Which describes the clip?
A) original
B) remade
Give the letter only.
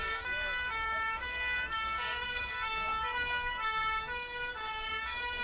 B